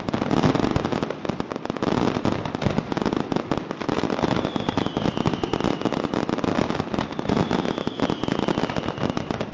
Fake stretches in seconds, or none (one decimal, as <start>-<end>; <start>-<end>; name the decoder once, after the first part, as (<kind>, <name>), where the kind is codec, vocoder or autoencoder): none